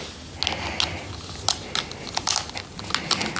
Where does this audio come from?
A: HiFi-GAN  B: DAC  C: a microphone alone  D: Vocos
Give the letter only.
C